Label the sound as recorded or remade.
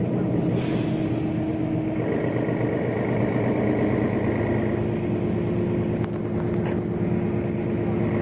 recorded